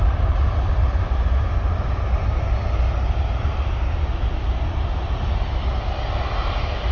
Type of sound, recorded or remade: recorded